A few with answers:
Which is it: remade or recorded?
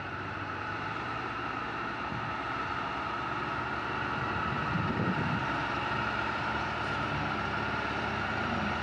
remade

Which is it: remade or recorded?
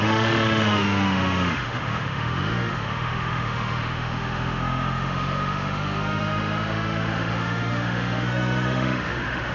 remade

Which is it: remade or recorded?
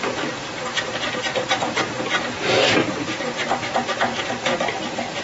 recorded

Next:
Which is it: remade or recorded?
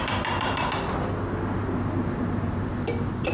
recorded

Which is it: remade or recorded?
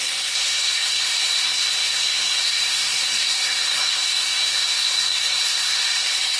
remade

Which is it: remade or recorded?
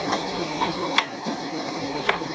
remade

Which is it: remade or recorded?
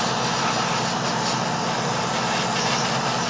recorded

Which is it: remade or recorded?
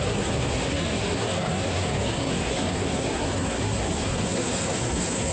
remade